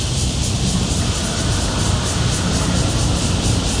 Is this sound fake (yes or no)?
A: no